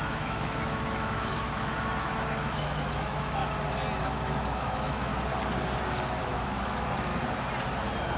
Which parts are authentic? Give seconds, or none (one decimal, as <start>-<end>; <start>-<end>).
3.4-4.0; 5.1-6.2; 7.1-8.2